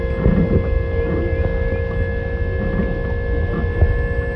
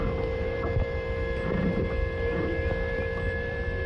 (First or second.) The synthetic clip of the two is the second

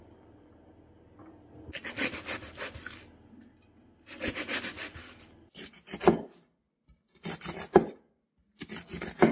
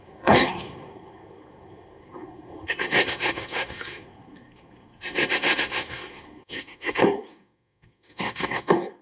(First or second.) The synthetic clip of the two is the second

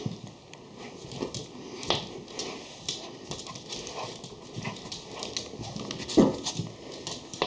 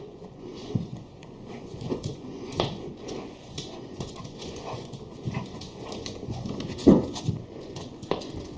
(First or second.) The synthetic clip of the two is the second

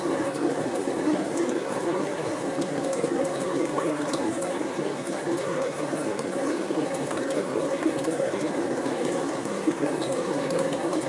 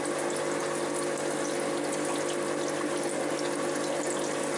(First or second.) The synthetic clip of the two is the first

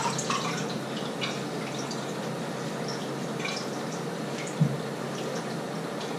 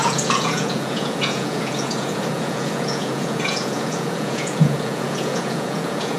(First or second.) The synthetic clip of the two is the second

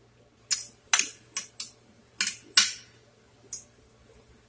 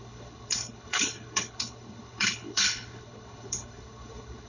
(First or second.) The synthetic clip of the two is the second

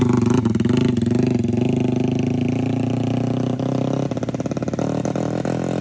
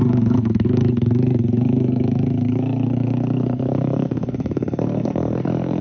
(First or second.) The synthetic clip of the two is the second